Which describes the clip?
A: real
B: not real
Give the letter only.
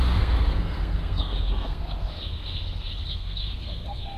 B